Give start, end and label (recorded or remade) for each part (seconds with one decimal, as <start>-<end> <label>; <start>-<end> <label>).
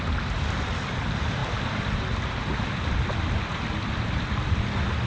0.0-5.1 recorded